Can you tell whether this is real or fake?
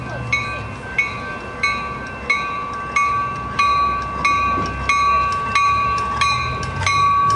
real